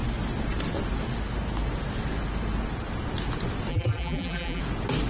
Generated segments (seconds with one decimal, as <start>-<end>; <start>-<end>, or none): 3.7-4.6